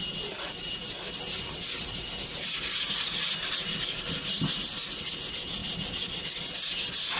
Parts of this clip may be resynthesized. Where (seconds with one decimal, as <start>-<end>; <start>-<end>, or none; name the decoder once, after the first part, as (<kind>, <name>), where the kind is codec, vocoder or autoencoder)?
none